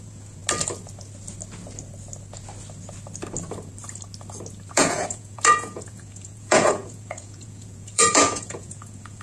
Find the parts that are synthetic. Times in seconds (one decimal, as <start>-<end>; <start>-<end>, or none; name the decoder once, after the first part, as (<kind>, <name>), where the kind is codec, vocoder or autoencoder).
0.0-0.4 (vocoder, Vocos); 4.7-9.2